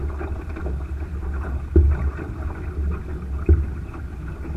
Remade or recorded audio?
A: recorded